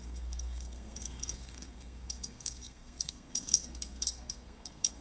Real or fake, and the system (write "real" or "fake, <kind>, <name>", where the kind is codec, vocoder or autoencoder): fake, codec, SNAC